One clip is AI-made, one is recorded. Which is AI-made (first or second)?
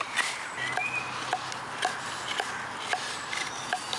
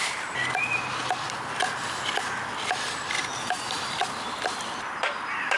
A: second